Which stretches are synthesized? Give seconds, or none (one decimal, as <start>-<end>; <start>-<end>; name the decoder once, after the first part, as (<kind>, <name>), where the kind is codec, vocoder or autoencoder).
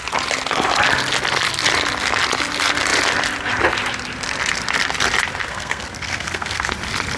5.4-6.7 (codec, SNAC)